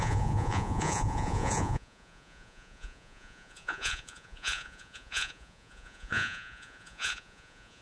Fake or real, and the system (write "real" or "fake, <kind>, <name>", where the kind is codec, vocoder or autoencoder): fake, vocoder, Vocos